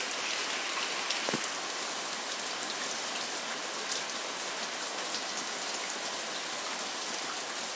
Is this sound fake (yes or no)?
no